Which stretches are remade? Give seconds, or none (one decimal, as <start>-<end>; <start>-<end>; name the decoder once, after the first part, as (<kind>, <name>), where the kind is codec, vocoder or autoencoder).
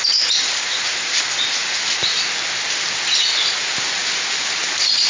none